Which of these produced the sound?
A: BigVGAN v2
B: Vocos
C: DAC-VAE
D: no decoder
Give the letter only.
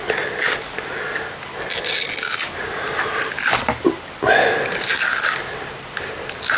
D